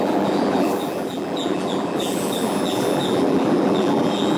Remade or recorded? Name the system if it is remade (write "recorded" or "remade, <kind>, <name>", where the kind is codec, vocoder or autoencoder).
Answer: remade, vocoder, BigVGAN v2